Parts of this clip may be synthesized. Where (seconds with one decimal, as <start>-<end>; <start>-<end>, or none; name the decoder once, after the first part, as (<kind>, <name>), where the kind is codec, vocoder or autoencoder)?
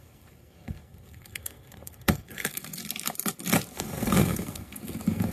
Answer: 0.0-2.8 (codec, SNAC); 3.7-5.3